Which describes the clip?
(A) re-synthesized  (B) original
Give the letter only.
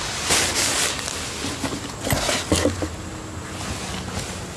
B